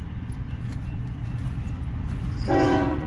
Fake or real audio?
fake